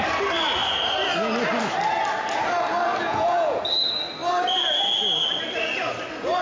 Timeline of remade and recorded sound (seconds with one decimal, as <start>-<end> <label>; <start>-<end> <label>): 0.0-3.0 recorded; 3.0-3.6 remade; 3.6-6.4 recorded

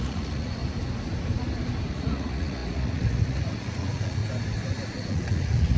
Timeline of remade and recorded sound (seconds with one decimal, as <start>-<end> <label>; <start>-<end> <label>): 0.0-0.6 remade; 0.6-1.9 recorded; 1.9-4.2 remade; 4.2-4.7 recorded; 4.7-5.8 remade